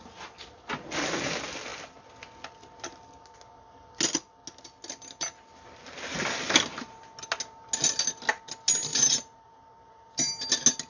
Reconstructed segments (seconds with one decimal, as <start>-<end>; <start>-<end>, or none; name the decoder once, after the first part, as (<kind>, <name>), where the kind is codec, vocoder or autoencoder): 8.9-10.1 (vocoder, BigVGAN v2)